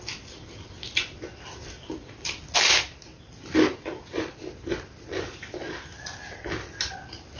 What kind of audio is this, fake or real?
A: real